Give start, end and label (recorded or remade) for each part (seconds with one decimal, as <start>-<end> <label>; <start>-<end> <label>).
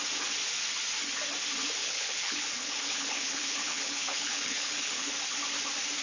0.0-1.8 recorded; 1.8-5.1 remade; 5.1-6.0 recorded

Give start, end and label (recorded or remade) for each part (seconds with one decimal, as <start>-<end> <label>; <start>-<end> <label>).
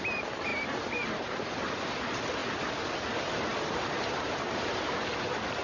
0.0-2.4 remade; 2.4-3.1 recorded; 3.1-5.6 remade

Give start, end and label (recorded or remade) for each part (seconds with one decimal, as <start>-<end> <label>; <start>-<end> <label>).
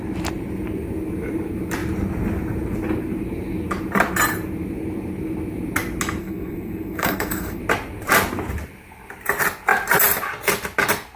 0.0-6.2 recorded; 6.2-7.6 remade; 7.6-11.2 recorded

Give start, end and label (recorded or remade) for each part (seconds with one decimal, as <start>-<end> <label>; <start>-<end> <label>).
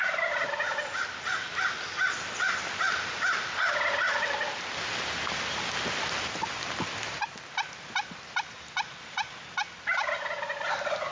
0.0-11.1 recorded